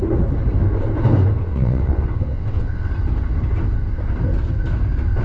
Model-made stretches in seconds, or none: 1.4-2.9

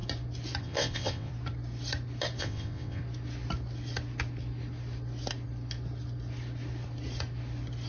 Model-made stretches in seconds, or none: 0.6-1.3; 2.4-3.0